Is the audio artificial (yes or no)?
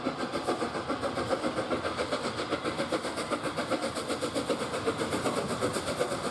no